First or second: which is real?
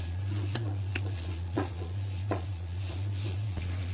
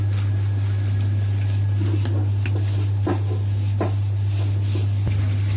second